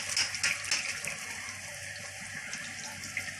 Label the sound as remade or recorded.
recorded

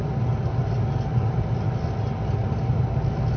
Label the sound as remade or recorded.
recorded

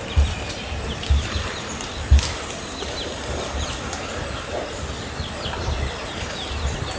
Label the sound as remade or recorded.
recorded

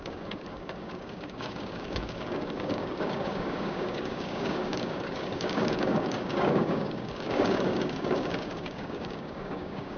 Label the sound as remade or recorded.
remade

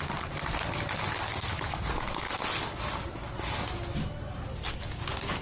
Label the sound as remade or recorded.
recorded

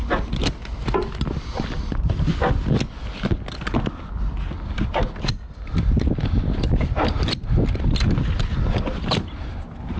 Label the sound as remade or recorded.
recorded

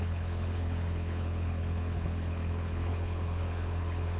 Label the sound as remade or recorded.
remade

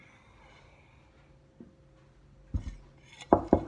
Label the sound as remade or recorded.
recorded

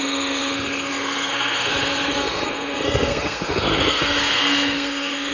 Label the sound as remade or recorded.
remade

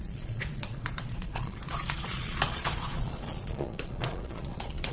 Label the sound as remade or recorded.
remade